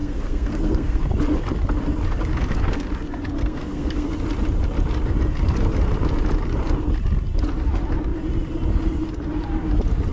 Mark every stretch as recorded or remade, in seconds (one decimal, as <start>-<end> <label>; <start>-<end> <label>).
0.0-1.1 remade; 1.1-3.4 recorded; 3.4-4.1 remade; 4.1-10.1 recorded